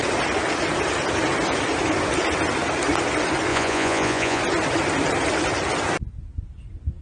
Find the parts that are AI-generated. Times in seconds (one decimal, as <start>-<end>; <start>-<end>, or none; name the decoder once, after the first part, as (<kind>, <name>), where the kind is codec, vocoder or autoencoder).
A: 3.5-4.4 (vocoder, Vocos)